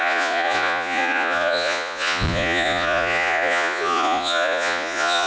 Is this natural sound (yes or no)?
no